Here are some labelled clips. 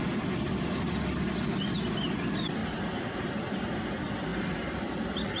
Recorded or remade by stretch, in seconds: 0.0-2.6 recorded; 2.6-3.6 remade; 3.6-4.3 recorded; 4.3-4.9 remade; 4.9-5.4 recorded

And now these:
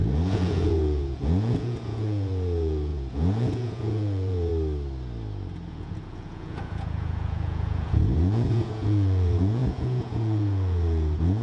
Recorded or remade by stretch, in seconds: 0.0-4.5 remade; 4.5-5.7 recorded; 5.7-11.4 remade